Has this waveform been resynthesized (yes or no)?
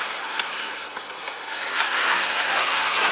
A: yes